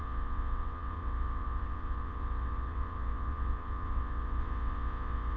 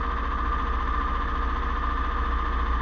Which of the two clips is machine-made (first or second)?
first